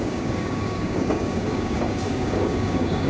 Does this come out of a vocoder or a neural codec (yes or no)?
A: yes